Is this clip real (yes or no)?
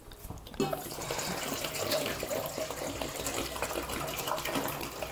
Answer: yes